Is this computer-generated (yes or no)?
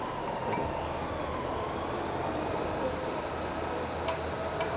no